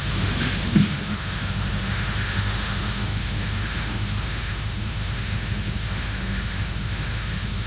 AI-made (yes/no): yes